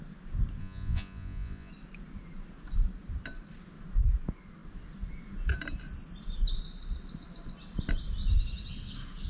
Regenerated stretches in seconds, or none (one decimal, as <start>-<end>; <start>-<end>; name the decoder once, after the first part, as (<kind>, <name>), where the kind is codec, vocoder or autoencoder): 0.6-1.7 (vocoder, Vocos)